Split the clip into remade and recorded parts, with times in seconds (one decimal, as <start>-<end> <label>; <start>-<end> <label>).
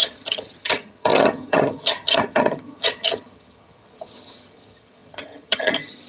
0.0-6.1 remade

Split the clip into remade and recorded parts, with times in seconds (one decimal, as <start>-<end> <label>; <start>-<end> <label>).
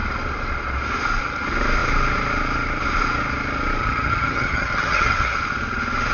0.0-3.8 recorded; 3.8-5.4 remade; 5.4-6.1 recorded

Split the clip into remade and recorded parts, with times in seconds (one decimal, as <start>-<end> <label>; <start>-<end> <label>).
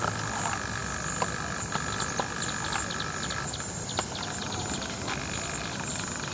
0.0-6.3 recorded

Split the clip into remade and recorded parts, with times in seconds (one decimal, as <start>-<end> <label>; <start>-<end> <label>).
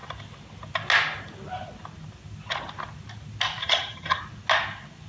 0.0-3.6 recorded; 3.6-4.2 remade; 4.2-5.1 recorded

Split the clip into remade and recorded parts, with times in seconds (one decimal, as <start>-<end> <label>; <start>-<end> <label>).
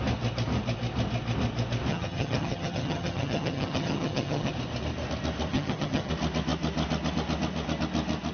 0.0-1.9 recorded; 1.9-4.5 remade; 4.5-5.5 recorded; 5.5-6.1 remade; 6.1-8.3 recorded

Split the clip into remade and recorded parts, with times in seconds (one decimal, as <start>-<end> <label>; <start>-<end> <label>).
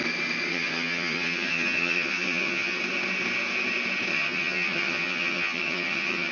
0.0-0.5 recorded; 0.5-2.8 remade; 2.8-4.1 recorded; 4.1-6.3 remade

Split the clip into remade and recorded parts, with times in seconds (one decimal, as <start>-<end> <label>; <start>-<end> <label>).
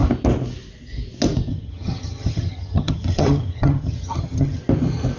0.0-1.5 recorded; 1.5-4.6 remade; 4.6-5.2 recorded